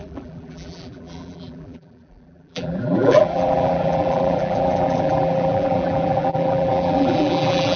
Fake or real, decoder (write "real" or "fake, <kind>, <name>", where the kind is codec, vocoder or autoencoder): fake, vocoder, BigVGAN v2